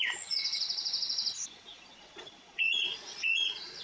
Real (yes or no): no